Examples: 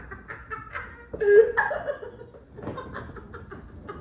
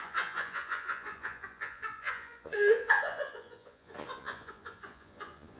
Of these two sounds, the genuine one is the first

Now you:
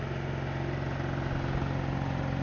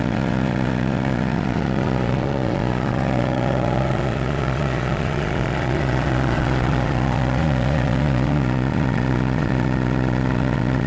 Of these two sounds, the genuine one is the first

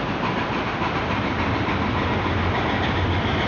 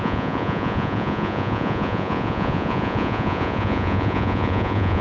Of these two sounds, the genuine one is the first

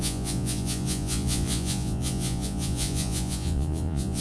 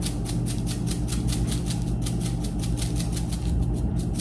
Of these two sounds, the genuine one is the second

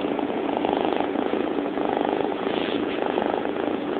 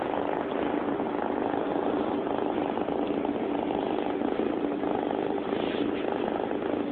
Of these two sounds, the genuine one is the second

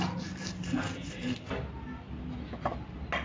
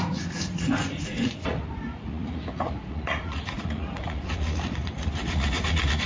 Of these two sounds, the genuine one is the first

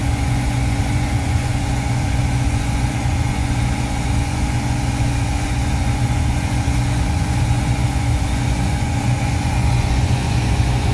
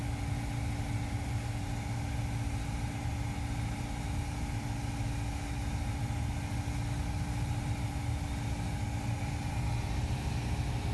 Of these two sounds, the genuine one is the second